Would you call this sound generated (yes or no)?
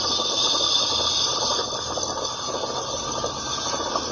no